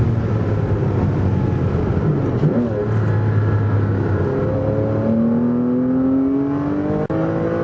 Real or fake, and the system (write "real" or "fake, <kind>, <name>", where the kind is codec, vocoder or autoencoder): real